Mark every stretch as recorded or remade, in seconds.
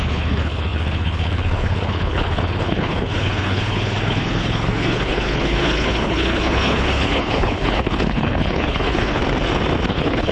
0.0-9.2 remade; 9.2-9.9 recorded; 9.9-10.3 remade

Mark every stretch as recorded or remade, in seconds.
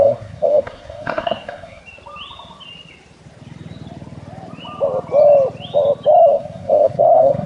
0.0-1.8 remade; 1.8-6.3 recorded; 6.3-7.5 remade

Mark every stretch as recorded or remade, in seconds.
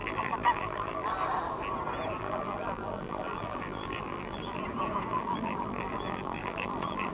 0.0-1.1 remade; 1.1-2.2 recorded; 2.2-4.6 remade; 4.6-5.1 recorded; 5.1-7.1 remade